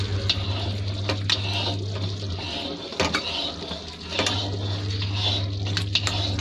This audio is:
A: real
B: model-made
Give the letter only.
A